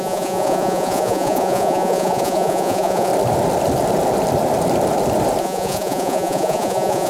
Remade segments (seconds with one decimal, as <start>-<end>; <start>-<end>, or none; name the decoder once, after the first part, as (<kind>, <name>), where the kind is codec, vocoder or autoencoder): 0.0-3.1 (vocoder, Vocos); 5.4-7.1